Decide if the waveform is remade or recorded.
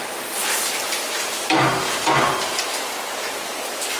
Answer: recorded